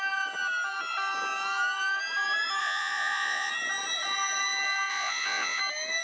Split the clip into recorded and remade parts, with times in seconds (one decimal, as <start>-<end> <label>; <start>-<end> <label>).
0.0-2.6 recorded; 2.6-3.5 remade; 3.5-4.9 recorded; 4.9-5.6 remade; 5.6-6.0 recorded